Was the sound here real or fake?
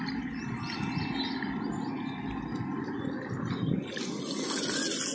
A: real